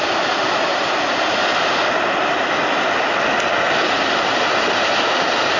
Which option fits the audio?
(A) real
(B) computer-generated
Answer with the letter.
A